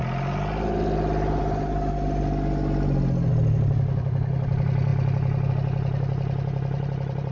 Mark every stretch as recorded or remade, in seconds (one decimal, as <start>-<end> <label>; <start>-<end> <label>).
0.0-3.3 recorded; 3.3-7.3 remade